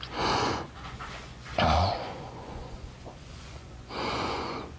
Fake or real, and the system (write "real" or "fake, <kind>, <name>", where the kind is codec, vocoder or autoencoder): fake, vocoder, Vocos